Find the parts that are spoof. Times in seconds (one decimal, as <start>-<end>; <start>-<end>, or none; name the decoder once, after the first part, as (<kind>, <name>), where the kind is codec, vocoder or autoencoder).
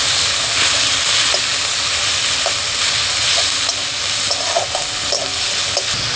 none